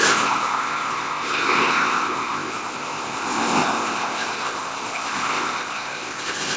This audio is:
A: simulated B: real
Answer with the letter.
A